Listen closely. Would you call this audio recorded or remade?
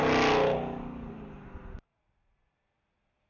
recorded